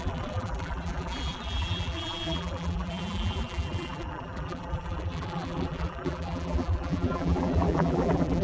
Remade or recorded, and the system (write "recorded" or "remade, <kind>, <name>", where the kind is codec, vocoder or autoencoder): remade, vocoder, BigVGAN v2